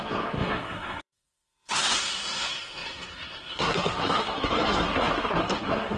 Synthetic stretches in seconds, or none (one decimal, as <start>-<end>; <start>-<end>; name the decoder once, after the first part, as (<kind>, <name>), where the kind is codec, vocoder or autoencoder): 0.0-6.0 (codec, SNAC)